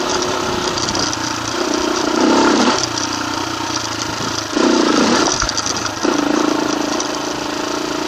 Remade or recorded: recorded